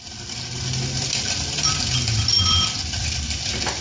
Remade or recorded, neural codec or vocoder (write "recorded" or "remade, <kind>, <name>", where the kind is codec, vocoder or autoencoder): recorded